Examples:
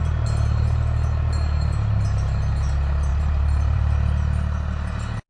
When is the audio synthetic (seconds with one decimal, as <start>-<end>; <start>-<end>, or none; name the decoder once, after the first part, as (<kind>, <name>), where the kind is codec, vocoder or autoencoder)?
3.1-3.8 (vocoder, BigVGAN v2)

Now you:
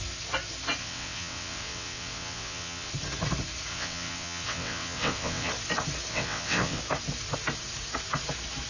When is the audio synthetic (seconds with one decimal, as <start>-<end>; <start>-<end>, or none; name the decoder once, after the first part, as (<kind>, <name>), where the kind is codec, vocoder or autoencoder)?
0.8-2.9 (vocoder, WaveNeXt); 3.7-5.5; 6.1-6.8

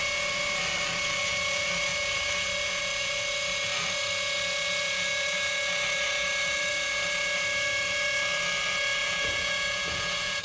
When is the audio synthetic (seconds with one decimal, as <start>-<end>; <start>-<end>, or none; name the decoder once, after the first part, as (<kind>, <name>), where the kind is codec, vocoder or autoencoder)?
9.0-10.4 (vocoder, Vocos)

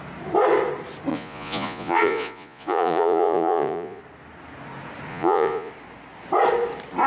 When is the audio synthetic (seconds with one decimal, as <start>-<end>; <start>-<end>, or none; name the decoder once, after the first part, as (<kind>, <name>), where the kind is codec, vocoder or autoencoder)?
1.1-4.0 (vocoder, Vocos); 5.1-5.7